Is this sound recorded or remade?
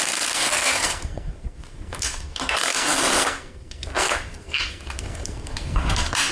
remade